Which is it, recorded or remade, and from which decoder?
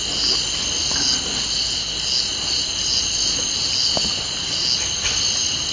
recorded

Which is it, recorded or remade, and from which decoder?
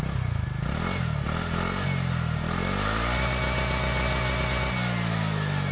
recorded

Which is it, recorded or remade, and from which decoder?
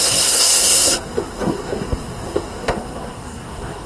remade, codec, SNAC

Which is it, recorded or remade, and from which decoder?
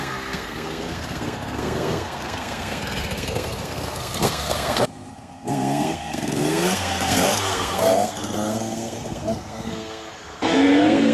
remade, codec, SNAC